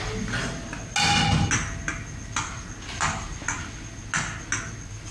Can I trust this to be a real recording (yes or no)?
yes